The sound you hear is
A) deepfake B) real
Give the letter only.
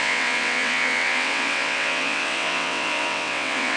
A